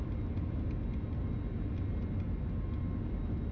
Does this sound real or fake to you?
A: real